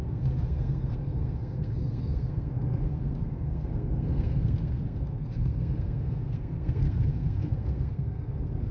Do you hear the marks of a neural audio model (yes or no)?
yes